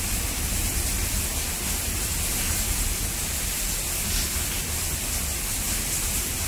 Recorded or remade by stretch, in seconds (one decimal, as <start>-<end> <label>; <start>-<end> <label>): 0.0-6.5 recorded